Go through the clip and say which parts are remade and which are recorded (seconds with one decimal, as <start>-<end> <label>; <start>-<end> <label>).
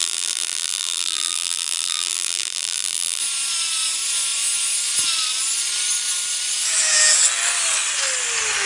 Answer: 0.0-3.2 remade; 3.2-8.7 recorded